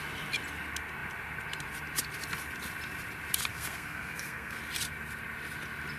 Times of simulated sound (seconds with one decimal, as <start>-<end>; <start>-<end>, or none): 3.5-4.6